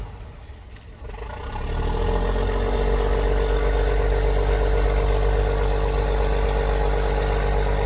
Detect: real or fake real